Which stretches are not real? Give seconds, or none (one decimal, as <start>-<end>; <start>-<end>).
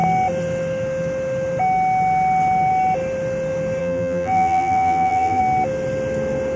3.8-5.4